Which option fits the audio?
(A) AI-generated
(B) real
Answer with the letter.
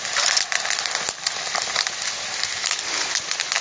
B